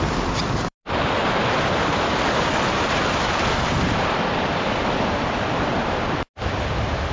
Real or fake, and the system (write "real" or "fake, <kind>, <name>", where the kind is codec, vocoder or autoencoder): real